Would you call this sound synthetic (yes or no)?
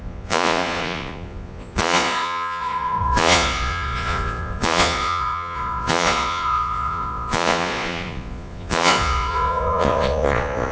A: yes